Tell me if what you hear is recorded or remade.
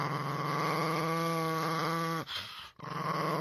recorded